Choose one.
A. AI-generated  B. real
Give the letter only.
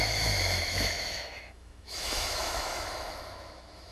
A